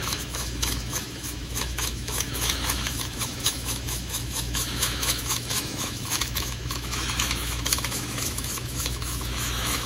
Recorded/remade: remade